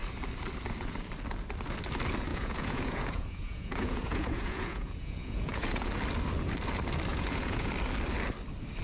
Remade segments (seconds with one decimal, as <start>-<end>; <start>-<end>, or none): 2.3-5.9; 7.1-7.7